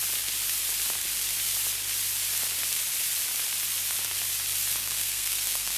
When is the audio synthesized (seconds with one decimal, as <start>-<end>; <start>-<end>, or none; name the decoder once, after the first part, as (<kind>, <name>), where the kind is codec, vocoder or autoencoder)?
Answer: 4.8-5.8 (codec, SNAC)